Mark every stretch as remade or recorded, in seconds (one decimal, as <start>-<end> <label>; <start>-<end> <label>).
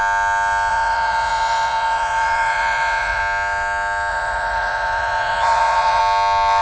0.0-0.7 recorded; 0.7-3.2 remade; 3.2-4.1 recorded; 4.1-6.0 remade; 6.0-6.6 recorded